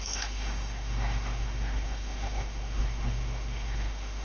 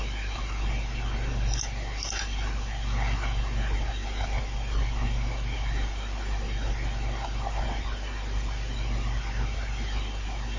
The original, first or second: second